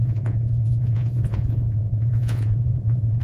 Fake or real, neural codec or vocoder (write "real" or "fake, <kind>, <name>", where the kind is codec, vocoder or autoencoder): fake, vocoder, Vocos